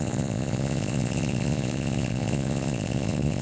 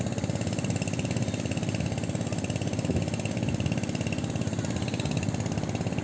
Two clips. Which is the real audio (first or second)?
second